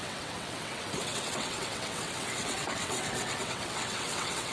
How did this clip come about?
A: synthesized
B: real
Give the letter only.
A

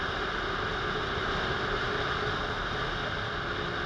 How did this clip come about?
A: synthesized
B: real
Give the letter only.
B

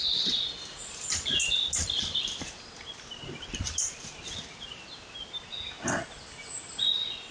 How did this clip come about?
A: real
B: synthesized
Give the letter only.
A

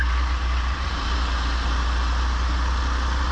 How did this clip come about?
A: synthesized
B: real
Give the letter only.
B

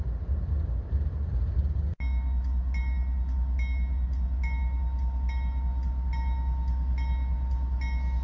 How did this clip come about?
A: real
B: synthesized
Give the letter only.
A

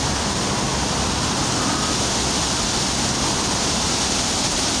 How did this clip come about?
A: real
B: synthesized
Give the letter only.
A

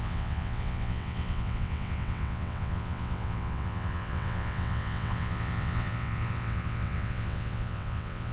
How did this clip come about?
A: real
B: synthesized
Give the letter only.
B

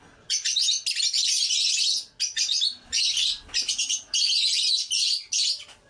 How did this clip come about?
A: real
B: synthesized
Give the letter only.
A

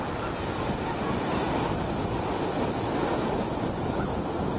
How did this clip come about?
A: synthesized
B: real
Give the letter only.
B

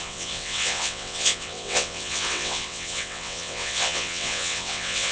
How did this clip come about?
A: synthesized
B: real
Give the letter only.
A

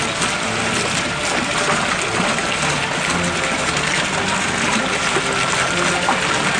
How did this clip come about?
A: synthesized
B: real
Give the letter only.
B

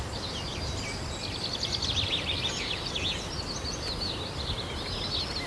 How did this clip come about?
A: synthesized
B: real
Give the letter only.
B